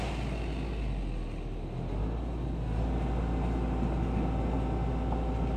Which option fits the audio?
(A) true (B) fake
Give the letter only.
A